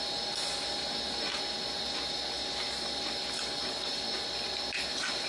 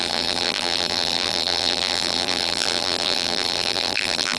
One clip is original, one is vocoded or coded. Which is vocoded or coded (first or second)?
second